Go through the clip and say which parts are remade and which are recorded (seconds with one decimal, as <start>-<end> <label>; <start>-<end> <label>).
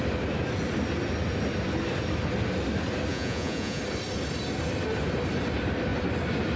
0.0-3.1 recorded; 3.1-3.8 remade; 3.8-6.6 recorded